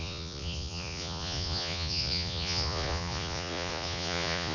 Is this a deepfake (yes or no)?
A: yes